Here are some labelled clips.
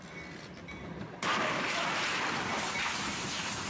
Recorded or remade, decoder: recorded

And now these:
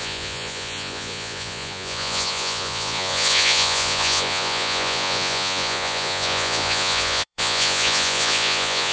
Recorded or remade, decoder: remade, vocoder, Vocos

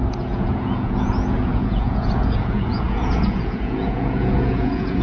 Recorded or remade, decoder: remade, vocoder, Vocos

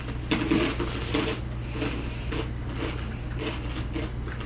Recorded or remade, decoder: recorded